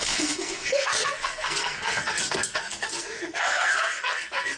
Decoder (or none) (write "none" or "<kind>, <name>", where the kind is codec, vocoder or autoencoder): codec, SNAC